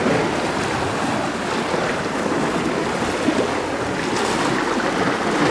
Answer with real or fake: real